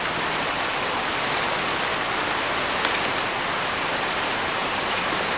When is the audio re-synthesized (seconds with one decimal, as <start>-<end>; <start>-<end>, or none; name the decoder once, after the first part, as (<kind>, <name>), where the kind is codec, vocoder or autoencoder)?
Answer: 0.0-0.7 (vocoder, BigVGAN v2); 3.9-5.4